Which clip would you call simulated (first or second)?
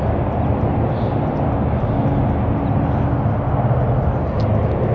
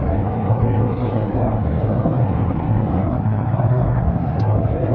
second